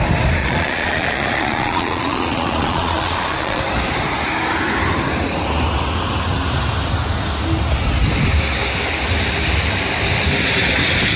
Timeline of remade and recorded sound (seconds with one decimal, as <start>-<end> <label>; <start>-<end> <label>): 0.0-0.4 recorded; 0.4-3.6 remade; 3.6-11.2 recorded

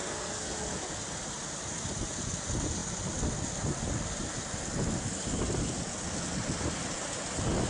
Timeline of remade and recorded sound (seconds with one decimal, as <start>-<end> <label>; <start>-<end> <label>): 0.0-0.7 remade; 0.7-7.7 recorded

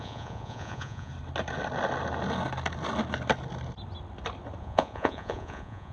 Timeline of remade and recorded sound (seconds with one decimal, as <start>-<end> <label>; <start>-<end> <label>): 0.0-1.1 remade; 1.1-4.6 recorded; 4.6-5.9 remade

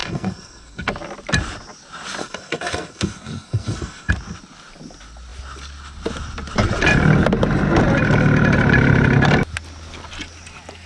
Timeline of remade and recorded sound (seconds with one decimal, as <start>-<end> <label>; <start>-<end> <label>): 0.0-0.9 remade; 0.9-2.2 recorded; 2.2-4.1 remade; 4.1-10.9 recorded

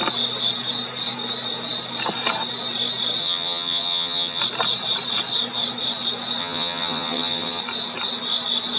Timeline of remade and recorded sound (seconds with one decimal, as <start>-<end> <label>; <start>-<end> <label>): 0.0-3.2 recorded; 3.2-4.4 remade; 4.4-6.4 recorded; 6.4-7.6 remade; 7.6-8.8 recorded

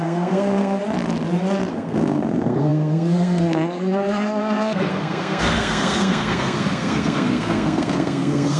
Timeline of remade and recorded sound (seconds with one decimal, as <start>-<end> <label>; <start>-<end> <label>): 0.0-0.8 remade; 0.8-1.7 recorded; 1.7-8.6 remade

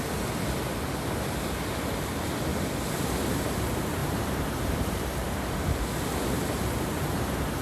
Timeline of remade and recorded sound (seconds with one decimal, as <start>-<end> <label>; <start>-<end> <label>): 0.0-4.0 recorded; 4.0-5.8 remade; 5.8-7.6 recorded

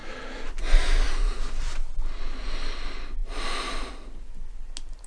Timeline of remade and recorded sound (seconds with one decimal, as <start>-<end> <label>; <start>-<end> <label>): 0.0-5.1 recorded